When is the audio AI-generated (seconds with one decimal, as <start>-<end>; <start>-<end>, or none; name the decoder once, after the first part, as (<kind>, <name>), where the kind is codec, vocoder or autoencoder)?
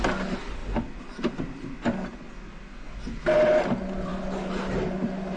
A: none